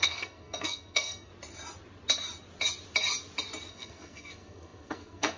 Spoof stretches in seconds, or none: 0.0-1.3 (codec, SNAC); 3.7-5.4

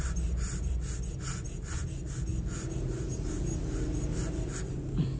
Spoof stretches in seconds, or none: none